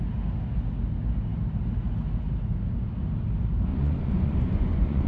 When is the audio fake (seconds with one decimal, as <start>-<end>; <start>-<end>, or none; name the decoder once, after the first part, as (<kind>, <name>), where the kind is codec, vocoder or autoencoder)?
3.7-5.1 (vocoder, Vocos)